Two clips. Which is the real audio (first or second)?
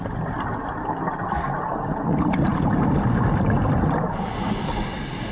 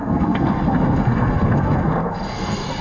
first